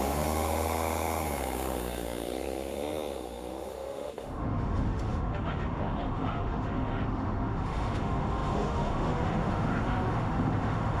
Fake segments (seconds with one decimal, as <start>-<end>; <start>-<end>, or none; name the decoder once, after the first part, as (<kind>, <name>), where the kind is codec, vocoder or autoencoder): 0.0-11.0 (autoencoder, DAC-VAE)